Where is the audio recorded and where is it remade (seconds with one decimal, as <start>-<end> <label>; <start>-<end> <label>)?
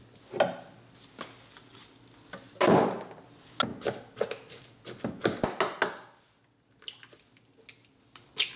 0.0-8.6 recorded